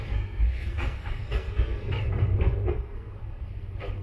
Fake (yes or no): yes